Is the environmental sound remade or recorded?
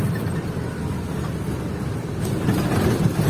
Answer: recorded